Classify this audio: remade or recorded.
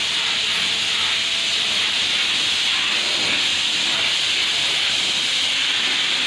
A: recorded